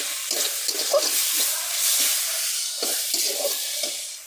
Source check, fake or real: real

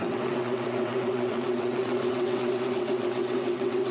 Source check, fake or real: fake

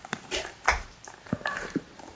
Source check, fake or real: fake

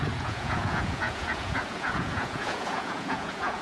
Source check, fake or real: fake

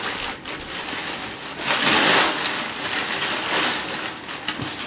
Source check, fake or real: real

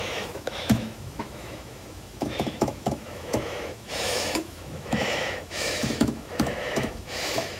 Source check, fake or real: fake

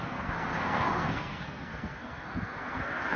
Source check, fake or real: fake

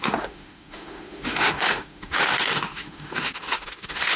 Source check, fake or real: fake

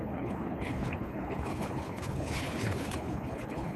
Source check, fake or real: fake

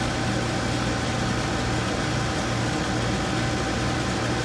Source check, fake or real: real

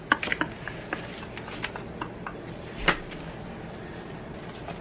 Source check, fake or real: real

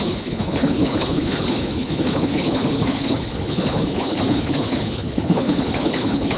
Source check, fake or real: fake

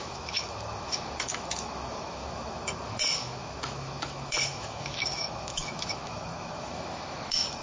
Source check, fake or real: fake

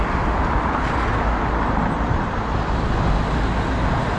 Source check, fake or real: real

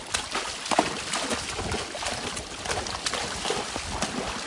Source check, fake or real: real